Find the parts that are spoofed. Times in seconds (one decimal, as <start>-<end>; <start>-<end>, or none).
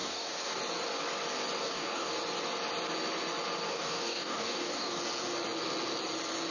0.0-0.6; 1.6-2.1; 3.7-5.0